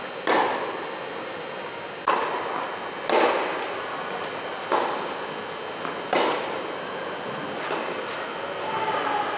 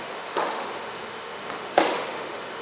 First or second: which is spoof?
second